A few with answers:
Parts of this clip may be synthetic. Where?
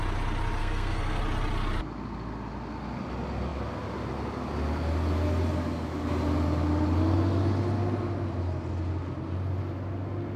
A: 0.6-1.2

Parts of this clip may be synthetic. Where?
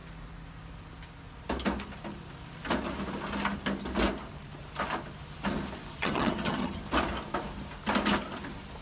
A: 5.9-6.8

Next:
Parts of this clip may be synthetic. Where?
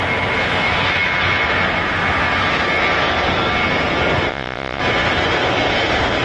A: 4.3-4.8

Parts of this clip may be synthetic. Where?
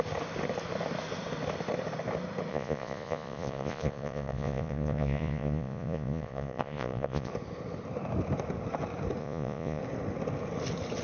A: 2.5-7.3; 9.2-9.8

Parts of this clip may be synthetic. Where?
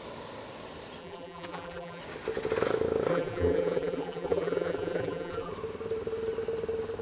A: 1.0-2.0; 3.1-5.5